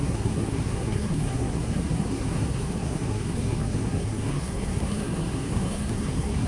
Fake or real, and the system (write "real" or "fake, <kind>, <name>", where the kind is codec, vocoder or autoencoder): fake, codec, SNAC